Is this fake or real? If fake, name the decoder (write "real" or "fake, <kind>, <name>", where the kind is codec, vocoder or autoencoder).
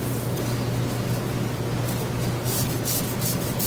real